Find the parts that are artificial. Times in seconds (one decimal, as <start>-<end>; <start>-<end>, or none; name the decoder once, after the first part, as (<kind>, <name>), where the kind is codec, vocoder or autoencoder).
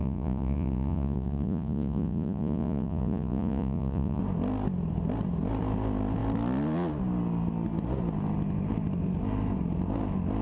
0.0-4.2 (vocoder, Vocos)